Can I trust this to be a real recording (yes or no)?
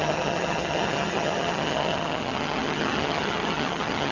no